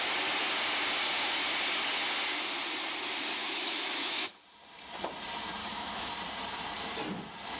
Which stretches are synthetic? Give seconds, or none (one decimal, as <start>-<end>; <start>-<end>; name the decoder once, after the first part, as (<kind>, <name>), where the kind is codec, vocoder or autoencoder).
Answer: 3.4-4.3 (autoencoder, DAC-VAE); 5.6-6.1